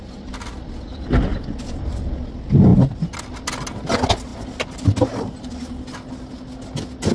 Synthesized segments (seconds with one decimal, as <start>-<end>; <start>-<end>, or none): none